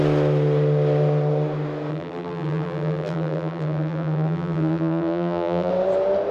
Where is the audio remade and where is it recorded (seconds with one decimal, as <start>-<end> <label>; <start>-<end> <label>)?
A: 0.0-1.9 recorded; 1.9-5.7 remade; 5.7-6.3 recorded